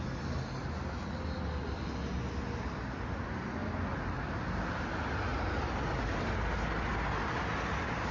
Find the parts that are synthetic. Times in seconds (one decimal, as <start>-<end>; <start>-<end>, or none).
3.6-4.6; 5.3-6.0